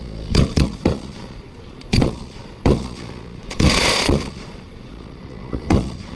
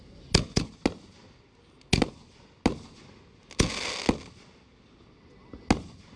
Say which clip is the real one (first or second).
second